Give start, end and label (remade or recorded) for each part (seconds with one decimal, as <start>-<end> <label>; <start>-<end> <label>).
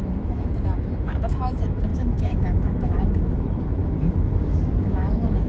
0.0-5.5 remade